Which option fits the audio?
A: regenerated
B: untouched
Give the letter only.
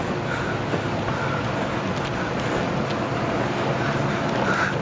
B